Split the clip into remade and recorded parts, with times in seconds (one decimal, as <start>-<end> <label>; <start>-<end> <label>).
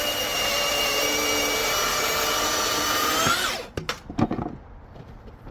0.0-5.5 recorded